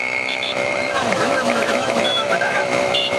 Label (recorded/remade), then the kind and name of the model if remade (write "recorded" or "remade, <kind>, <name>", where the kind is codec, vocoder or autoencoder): remade, autoencoder, DAC-VAE